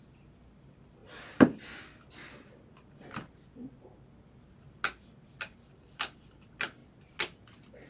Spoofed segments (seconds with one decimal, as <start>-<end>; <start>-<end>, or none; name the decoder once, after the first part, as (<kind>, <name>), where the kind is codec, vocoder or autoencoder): 0.0-1.0 (vocoder, BigVGAN v2); 5.4-6.8